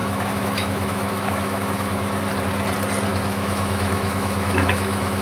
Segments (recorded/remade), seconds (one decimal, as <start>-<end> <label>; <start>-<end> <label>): 0.0-2.2 remade; 2.2-3.1 recorded; 3.1-5.2 remade